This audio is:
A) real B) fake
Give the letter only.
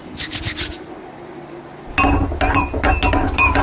A